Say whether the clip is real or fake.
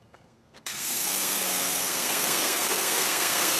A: fake